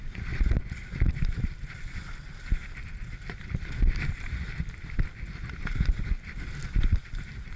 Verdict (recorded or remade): recorded